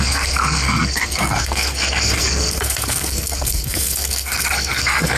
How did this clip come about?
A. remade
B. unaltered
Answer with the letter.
A